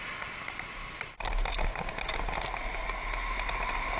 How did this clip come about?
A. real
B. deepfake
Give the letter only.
A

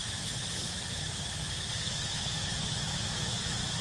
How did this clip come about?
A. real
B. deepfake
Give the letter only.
B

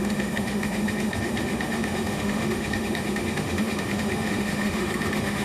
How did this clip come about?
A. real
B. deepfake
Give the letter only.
B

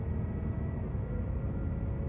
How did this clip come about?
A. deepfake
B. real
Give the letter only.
B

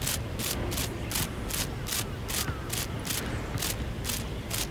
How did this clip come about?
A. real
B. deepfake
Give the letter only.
A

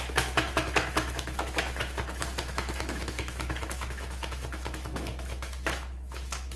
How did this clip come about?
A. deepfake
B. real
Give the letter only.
A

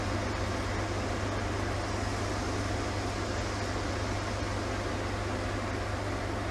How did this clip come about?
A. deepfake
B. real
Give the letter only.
B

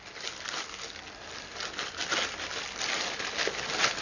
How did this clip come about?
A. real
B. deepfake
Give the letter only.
A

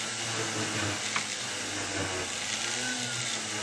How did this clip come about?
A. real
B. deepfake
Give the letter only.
A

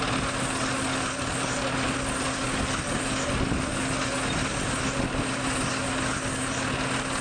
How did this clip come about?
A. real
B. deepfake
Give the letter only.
A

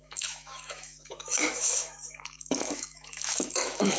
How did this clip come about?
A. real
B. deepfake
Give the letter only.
B